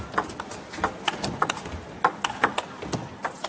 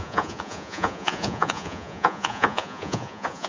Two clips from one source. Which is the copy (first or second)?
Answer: second